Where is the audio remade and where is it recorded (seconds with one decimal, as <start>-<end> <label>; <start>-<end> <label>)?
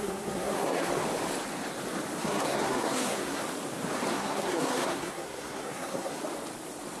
0.0-0.9 remade; 0.9-2.2 recorded; 2.2-3.4 remade; 3.4-4.1 recorded; 4.1-6.2 remade; 6.2-7.0 recorded